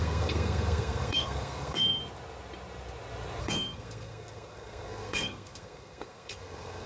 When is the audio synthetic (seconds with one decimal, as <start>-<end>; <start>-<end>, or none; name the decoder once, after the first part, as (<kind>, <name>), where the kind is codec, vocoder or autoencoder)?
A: 0.0-2.0 (codec, SNAC); 3.4-6.9